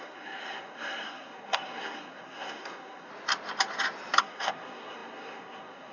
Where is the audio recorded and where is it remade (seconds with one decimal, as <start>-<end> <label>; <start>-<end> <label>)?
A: 0.0-3.1 remade; 3.1-4.2 recorded; 4.2-5.9 remade